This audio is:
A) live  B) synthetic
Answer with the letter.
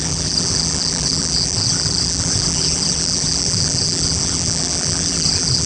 B